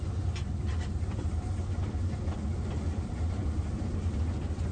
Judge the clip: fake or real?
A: real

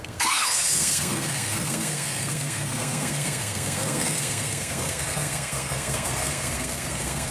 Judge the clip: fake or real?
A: fake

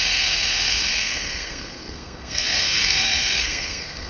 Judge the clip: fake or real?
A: fake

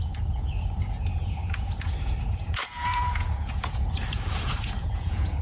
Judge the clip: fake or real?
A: fake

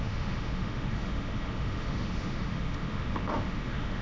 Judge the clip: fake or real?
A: fake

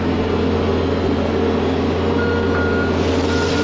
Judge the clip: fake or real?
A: real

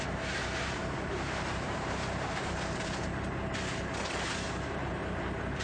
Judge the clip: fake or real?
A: fake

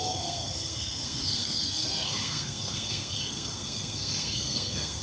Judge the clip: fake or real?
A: fake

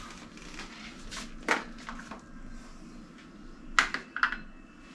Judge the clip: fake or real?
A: real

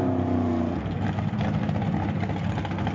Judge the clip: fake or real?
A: real